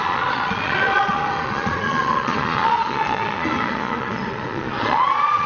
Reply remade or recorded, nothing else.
remade